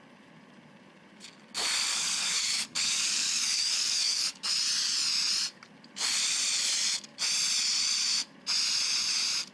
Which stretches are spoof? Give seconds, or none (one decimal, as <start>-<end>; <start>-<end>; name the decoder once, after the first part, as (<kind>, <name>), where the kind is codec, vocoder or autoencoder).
1.9-4.5 (codec, DAC)